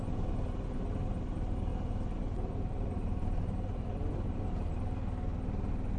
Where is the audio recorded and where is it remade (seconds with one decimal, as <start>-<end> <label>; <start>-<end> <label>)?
0.0-1.7 recorded; 1.7-4.1 remade; 4.1-6.0 recorded